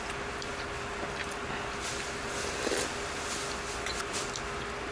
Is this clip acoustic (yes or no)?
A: yes